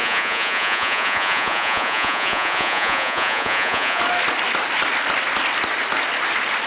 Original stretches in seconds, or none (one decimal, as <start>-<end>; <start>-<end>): 4.0-6.7